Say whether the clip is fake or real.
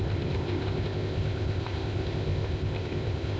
fake